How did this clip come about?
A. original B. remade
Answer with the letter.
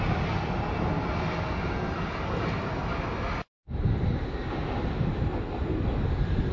A